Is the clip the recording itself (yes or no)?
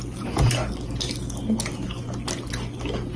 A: yes